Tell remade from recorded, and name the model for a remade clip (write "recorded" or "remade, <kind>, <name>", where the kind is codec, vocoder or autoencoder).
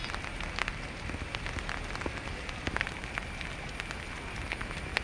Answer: recorded